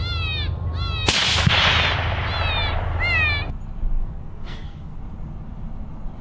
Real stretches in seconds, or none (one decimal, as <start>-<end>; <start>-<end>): 0.0-4.0; 5.0-6.2